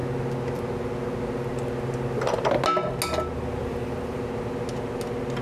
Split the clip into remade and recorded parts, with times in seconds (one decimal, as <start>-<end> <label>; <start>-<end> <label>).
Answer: 0.0-3.6 recorded; 3.6-4.2 remade; 4.2-5.4 recorded